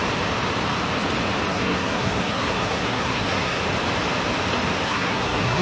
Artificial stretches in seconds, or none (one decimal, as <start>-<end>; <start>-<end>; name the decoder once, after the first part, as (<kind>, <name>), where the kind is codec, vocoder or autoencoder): 1.5-3.6 (codec, SNAC); 4.8-5.6